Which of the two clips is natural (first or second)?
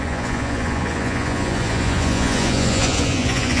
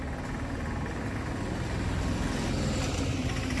second